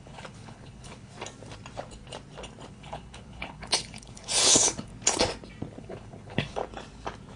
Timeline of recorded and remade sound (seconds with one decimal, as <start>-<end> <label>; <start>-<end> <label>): 0.0-1.1 remade; 1.1-2.7 recorded; 2.7-4.9 remade; 4.9-5.8 recorded; 5.8-6.6 remade; 6.6-7.4 recorded